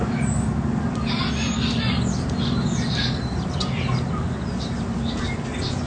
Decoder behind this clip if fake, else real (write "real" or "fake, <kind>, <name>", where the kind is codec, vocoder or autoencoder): real